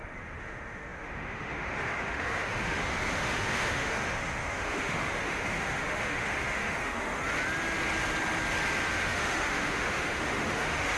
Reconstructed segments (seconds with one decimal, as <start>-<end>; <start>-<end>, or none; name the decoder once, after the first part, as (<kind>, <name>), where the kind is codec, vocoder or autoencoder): 0.0-7.2 (autoencoder, DAC-VAE); 8.9-11.0